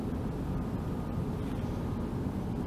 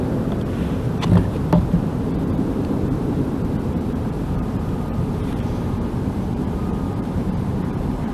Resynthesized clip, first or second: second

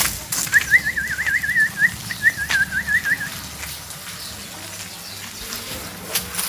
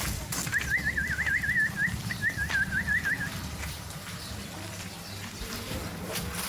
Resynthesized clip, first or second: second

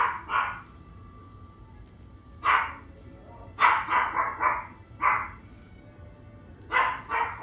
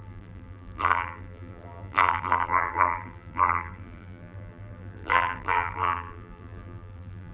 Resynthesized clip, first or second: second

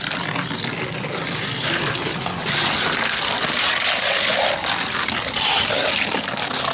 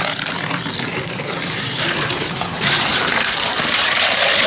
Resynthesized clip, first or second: second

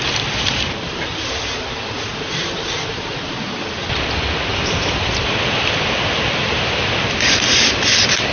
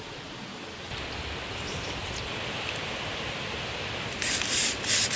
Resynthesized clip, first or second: first